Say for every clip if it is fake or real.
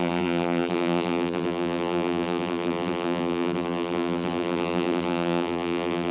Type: fake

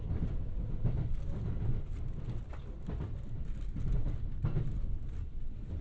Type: real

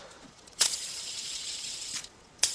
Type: fake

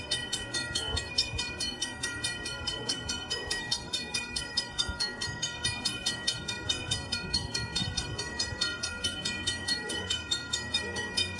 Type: fake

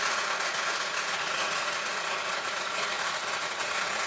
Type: fake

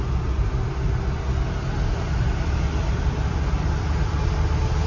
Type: real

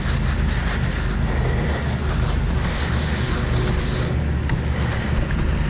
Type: real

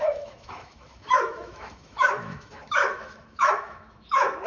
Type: fake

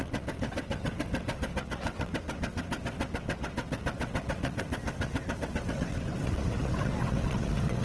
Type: fake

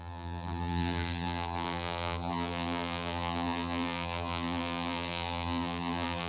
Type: fake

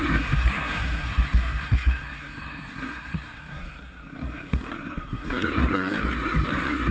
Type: fake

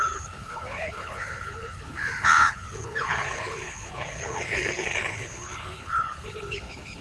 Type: fake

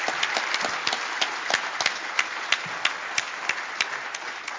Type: real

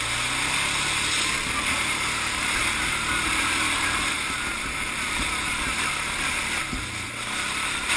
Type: real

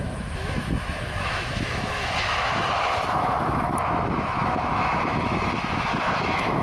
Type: fake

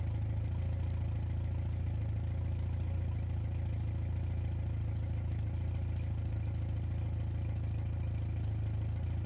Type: real